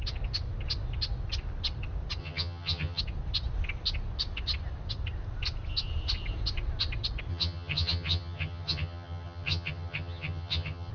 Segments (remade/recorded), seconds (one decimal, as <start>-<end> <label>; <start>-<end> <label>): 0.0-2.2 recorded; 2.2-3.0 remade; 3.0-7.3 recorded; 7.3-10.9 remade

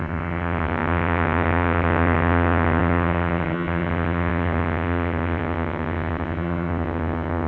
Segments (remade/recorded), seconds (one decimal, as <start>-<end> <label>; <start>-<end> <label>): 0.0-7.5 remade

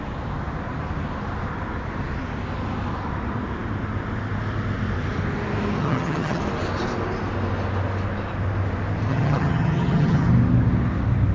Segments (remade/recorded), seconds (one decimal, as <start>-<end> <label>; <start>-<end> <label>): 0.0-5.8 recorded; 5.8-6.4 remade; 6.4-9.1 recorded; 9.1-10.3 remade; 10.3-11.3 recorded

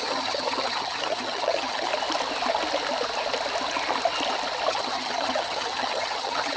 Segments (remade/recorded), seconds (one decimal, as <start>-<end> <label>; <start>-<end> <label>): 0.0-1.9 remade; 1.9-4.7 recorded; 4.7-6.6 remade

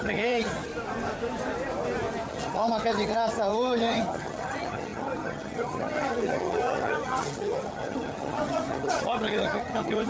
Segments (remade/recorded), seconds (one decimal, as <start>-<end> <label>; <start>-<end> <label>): 0.0-0.7 remade; 0.7-2.3 recorded; 2.3-10.1 remade

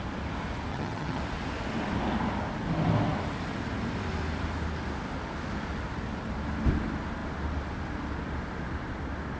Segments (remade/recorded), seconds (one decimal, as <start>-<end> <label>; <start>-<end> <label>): 0.0-0.7 recorded; 0.7-1.2 remade; 1.2-9.4 recorded

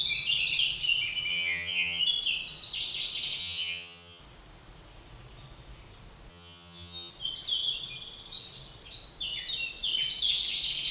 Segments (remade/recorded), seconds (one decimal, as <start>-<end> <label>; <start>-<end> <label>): 0.0-1.3 recorded; 1.3-2.0 remade; 2.0-3.4 recorded; 3.4-4.2 remade; 4.2-6.3 recorded; 6.3-7.1 remade; 7.1-10.9 recorded

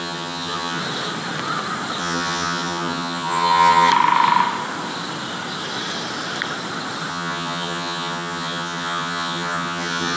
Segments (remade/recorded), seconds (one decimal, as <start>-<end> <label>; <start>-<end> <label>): 0.0-0.8 remade; 0.8-2.0 recorded; 2.0-3.9 remade; 3.9-7.1 recorded; 7.1-10.2 remade